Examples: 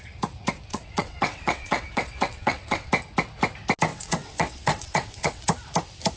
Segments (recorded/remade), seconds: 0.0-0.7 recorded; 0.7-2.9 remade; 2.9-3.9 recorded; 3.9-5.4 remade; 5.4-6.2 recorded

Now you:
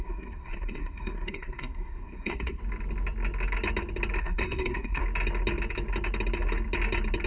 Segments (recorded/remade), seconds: 0.0-2.6 remade; 2.6-4.2 recorded; 4.2-5.0 remade; 5.0-7.3 recorded

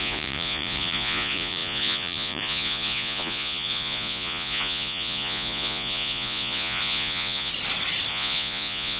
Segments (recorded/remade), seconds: 0.0-7.5 remade; 7.5-8.1 recorded; 8.1-9.0 remade

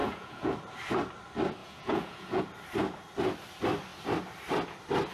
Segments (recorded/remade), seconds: 0.0-0.5 remade; 0.5-1.6 recorded; 1.6-2.4 remade; 2.4-5.1 recorded

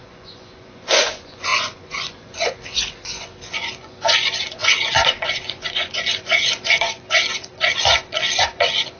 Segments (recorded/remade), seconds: 0.0-9.0 remade

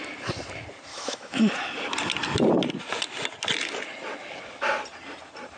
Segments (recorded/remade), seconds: 0.0-0.9 recorded; 0.9-1.5 remade; 1.5-5.6 recorded